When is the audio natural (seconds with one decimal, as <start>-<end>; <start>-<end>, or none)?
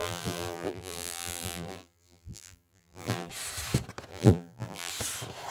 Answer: 3.3-4.1; 4.9-5.5